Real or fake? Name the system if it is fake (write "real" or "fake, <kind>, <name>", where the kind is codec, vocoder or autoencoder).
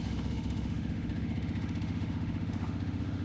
fake, autoencoder, DAC-VAE